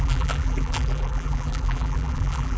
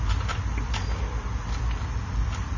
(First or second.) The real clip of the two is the second